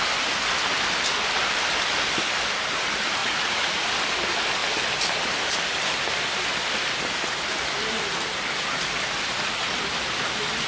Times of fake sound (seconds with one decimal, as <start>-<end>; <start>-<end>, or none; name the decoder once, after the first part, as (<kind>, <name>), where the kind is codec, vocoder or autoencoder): 3.2-3.9 (vocoder, Vocos)